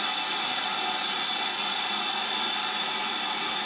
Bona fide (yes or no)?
yes